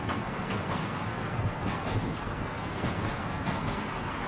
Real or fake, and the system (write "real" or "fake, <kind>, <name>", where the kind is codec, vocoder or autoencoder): fake, codec, SNAC